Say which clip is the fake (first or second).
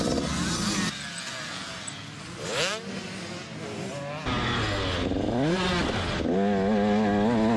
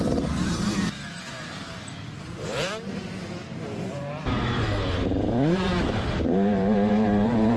second